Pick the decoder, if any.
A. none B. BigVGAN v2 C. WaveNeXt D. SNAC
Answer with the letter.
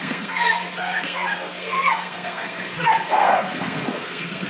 D